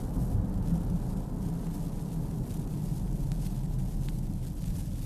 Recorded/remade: recorded